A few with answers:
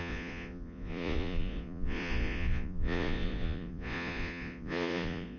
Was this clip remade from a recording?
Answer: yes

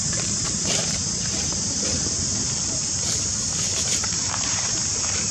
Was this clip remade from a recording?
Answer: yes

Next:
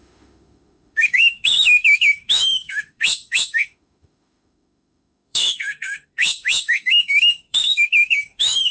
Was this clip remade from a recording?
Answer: yes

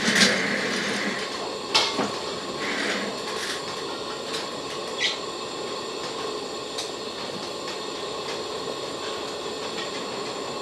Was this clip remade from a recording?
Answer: no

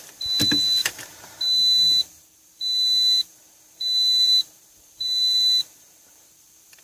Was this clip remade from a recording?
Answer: yes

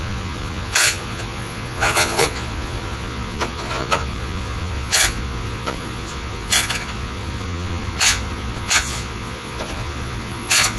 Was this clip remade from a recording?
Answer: yes